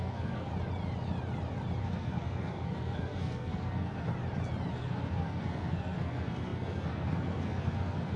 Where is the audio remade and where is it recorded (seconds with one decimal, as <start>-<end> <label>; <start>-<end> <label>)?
0.0-0.5 remade; 0.5-1.8 recorded; 1.8-4.1 remade; 4.1-4.7 recorded; 4.7-8.2 remade